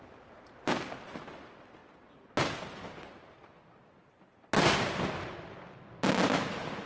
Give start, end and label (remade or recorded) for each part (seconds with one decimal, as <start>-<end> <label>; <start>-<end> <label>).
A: 0.0-6.9 recorded